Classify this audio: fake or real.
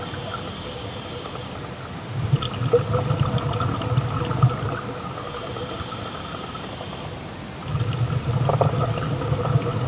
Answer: real